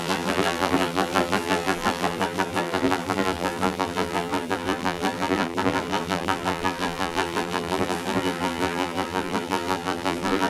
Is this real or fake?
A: fake